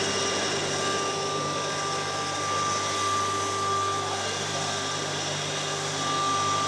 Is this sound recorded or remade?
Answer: recorded